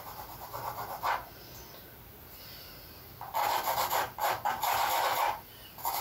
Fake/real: real